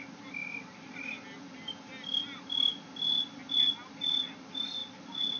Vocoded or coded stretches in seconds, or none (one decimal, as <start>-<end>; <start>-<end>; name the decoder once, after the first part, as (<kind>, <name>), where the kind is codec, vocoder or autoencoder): none